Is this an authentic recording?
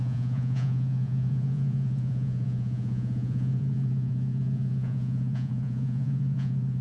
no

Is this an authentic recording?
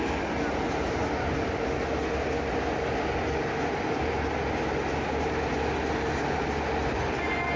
yes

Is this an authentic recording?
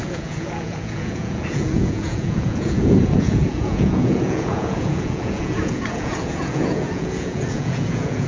no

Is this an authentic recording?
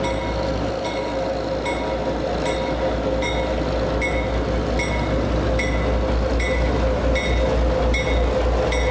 yes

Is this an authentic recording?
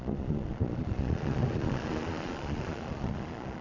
no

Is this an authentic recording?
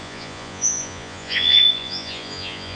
no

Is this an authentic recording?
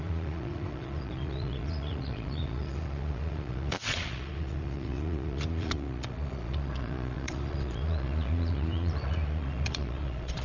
no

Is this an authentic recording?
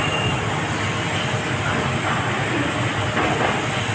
yes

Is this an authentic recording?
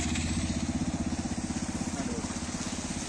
yes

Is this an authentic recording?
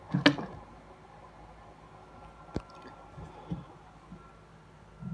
yes